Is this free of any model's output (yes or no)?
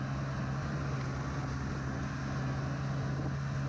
yes